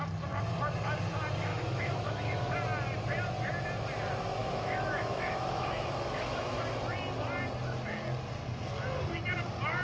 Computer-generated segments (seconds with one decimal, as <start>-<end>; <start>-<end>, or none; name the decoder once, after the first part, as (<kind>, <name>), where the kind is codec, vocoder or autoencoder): 1.5-2.5 (autoencoder, DAC-VAE); 4.4-6.6